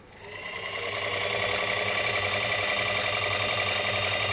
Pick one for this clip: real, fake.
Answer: real